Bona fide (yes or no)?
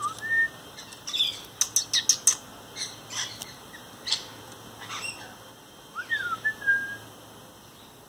yes